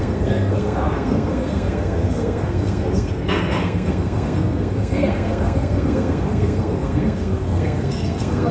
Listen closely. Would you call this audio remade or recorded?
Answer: remade